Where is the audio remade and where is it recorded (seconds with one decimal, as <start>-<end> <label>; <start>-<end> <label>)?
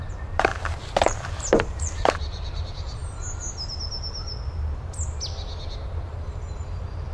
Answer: 0.0-3.0 remade; 3.0-6.3 recorded; 6.3-7.1 remade